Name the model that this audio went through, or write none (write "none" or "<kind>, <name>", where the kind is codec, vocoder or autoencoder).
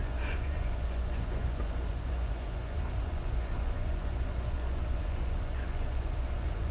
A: vocoder, Vocos